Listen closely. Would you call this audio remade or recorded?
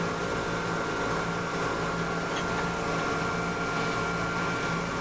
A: recorded